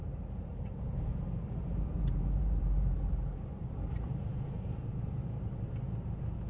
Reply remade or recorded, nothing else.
remade